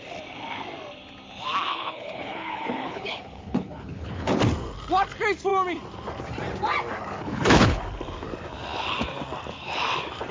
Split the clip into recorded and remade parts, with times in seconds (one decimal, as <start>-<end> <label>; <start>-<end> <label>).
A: 0.0-1.7 recorded; 1.7-4.4 remade; 4.4-7.2 recorded; 7.2-7.8 remade; 7.8-10.3 recorded